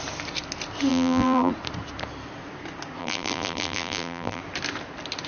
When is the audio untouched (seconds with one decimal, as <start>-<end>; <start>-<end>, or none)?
0.0-0.9; 1.5-3.0; 4.4-5.3